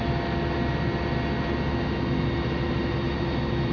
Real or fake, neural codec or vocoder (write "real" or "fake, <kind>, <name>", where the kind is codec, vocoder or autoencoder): real